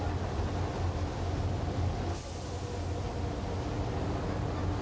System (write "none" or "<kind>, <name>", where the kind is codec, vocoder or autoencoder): none